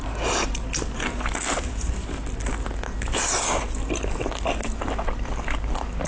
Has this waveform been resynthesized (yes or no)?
no